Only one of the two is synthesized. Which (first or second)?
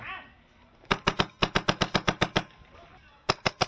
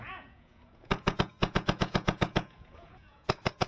second